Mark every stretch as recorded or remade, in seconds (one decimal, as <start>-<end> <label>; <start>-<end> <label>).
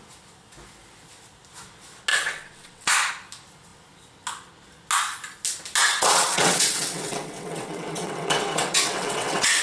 0.0-2.1 recorded; 2.1-2.9 remade; 2.9-5.8 recorded; 5.8-9.6 remade